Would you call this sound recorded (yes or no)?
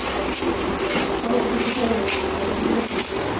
yes